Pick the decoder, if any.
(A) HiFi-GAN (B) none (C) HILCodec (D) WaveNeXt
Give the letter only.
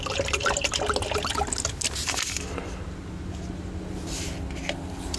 B